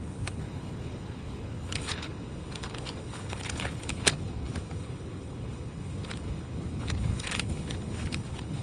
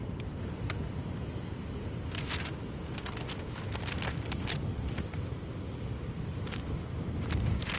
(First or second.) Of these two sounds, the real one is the second